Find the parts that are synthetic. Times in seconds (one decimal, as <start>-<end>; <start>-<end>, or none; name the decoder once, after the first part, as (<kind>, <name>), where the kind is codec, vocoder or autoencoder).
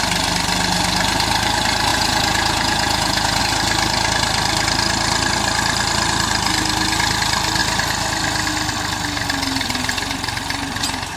1.9-3.4 (vocoder, Vocos)